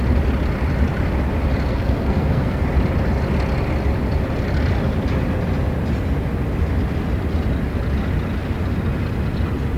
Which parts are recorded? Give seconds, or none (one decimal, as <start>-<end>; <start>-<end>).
0.0-1.7; 2.6-9.8